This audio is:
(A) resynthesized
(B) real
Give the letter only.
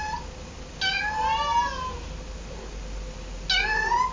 B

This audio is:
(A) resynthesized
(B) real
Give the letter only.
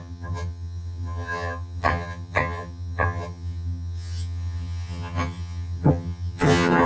A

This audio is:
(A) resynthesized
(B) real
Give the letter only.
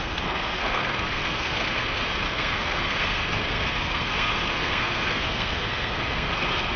A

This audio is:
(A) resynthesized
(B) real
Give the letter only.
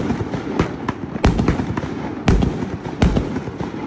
B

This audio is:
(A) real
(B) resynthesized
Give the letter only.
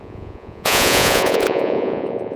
B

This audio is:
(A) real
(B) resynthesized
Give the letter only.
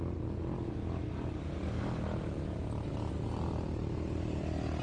A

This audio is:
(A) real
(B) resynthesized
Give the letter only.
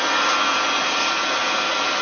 A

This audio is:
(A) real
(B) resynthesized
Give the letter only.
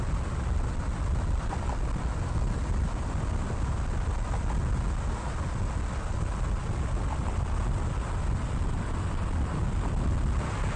A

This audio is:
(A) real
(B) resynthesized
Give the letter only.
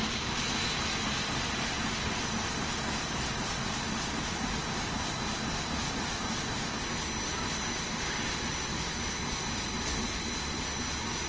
A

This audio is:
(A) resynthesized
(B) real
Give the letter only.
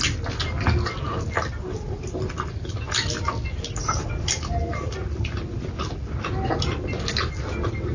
B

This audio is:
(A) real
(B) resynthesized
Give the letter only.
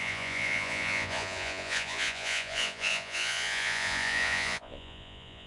B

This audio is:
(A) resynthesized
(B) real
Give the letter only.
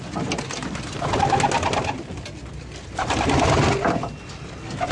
B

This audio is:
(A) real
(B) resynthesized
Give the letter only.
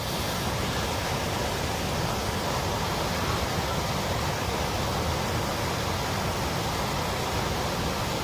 A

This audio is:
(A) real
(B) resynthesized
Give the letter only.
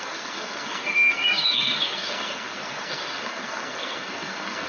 B